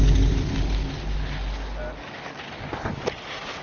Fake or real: real